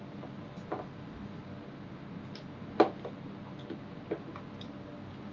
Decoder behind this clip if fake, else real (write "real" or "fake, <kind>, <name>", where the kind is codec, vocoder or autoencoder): real